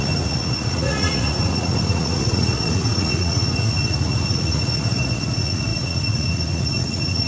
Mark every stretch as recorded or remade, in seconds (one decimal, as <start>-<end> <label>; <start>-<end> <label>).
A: 0.0-7.3 remade